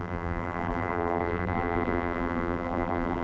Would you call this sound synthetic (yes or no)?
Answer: yes